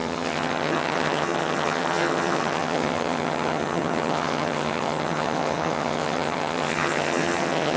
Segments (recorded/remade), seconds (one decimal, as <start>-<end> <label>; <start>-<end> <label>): 0.0-7.8 remade